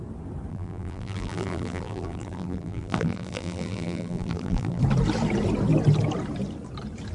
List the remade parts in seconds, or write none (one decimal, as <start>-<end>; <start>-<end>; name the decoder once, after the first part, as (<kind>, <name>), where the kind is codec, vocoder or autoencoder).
0.5-4.8 (vocoder, BigVGAN v2)